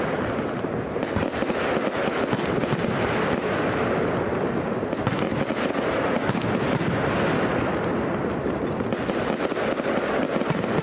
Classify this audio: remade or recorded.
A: recorded